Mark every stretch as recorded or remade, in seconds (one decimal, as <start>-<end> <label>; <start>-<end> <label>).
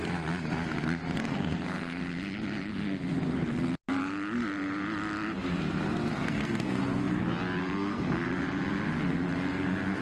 0.0-1.2 recorded; 1.2-2.0 remade; 2.0-6.1 recorded; 6.1-6.8 remade; 6.8-7.6 recorded; 7.6-8.4 remade; 8.4-10.0 recorded